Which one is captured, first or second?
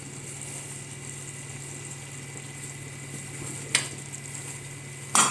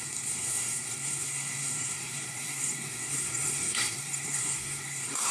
first